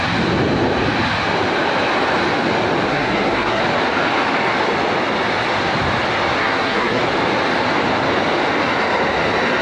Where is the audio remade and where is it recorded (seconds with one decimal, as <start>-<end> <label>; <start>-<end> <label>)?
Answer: 0.0-2.9 recorded; 2.9-3.6 remade; 3.6-6.4 recorded; 6.4-7.0 remade; 7.0-9.6 recorded